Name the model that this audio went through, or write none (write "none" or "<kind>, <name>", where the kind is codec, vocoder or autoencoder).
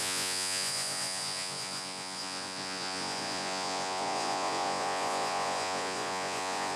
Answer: vocoder, Vocos